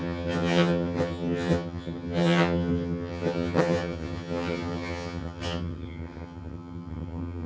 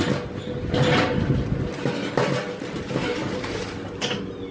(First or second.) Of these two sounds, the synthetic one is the first